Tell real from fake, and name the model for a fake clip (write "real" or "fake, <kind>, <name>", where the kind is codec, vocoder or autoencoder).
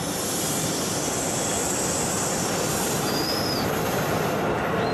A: real